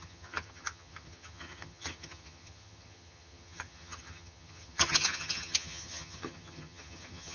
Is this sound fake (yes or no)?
yes